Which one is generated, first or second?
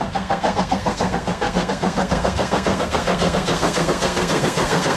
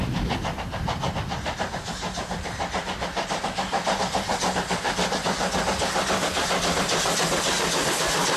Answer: first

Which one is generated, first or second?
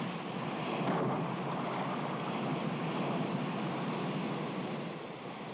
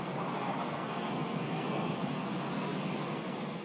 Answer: second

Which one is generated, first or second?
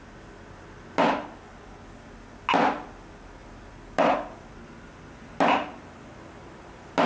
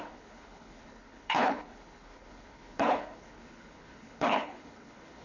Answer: second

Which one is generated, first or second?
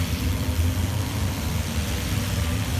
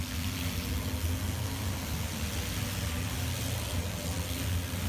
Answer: first